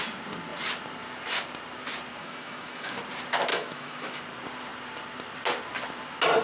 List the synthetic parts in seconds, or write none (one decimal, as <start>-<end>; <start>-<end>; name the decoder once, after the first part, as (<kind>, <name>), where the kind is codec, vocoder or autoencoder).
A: 2.2-3.0 (autoencoder, DAC-VAE); 3.5-4.2